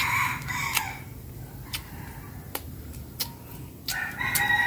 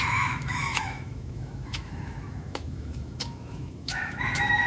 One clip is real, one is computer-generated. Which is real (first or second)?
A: first